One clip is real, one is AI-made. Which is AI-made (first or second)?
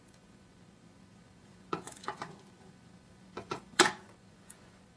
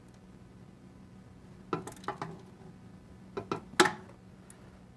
first